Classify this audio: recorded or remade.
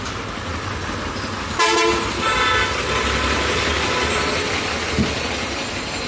recorded